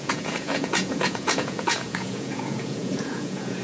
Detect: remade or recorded remade